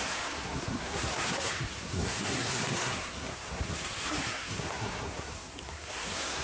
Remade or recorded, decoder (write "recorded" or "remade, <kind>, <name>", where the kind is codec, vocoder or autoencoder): remade, codec, SNAC